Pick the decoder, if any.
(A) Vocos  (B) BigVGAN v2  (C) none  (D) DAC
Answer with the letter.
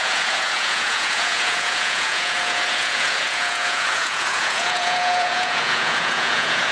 A